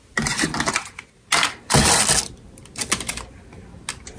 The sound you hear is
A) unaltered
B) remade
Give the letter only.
A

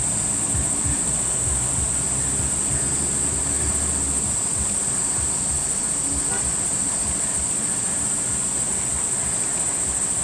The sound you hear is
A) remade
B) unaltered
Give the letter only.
B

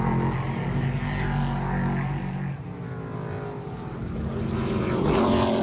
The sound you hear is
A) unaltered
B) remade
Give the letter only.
A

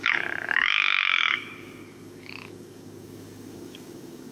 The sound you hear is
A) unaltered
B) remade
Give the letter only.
B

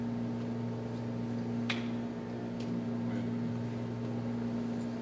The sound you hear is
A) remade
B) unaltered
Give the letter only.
B